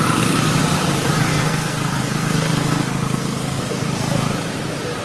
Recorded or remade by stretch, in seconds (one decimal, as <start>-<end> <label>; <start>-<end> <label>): 0.0-1.3 recorded; 1.3-4.3 remade; 4.3-5.0 recorded